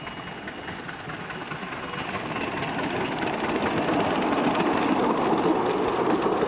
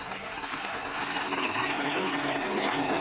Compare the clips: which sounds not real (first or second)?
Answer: second